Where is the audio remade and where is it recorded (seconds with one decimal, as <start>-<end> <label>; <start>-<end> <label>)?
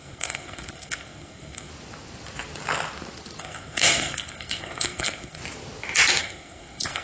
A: 0.0-1.7 remade; 1.7-3.4 recorded; 3.4-5.4 remade; 5.4-6.2 recorded; 6.2-7.0 remade